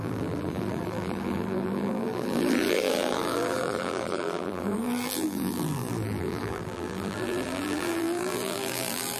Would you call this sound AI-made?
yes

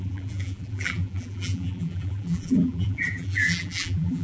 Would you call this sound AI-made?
yes